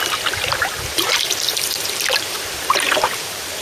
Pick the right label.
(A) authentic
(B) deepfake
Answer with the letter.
B